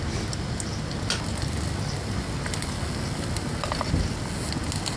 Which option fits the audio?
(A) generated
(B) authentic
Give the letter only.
B